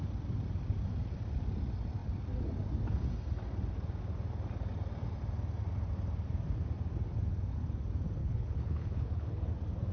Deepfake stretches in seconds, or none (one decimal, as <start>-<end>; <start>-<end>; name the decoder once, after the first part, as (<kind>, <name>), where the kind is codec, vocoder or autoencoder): 8.2-9.5 (codec, HILCodec)